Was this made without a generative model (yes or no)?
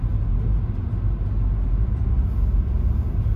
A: yes